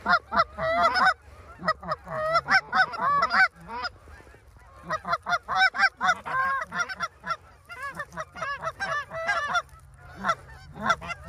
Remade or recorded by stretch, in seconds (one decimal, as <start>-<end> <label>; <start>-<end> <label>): 0.0-6.4 recorded; 6.4-9.8 remade; 9.8-11.3 recorded